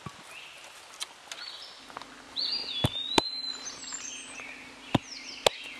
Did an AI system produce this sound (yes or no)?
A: no